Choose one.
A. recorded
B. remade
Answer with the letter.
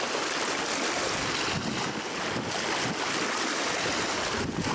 A